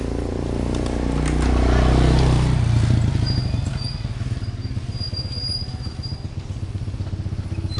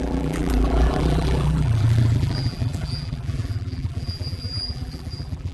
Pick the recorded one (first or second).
first